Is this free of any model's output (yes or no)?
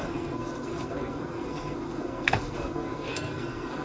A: no